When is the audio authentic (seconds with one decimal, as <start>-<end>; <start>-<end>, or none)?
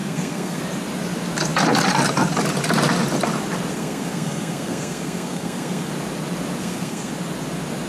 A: 0.6-3.7; 5.9-6.6; 7.1-7.9